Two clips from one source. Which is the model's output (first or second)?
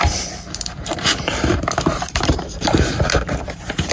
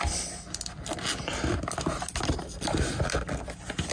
first